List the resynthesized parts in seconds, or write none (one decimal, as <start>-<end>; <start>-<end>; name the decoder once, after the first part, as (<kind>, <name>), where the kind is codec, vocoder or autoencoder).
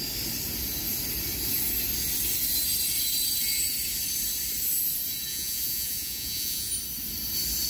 5.3-6.7 (vocoder, Vocos)